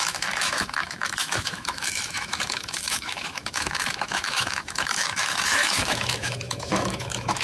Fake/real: fake